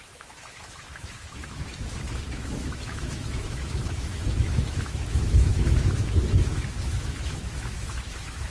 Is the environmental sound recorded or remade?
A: remade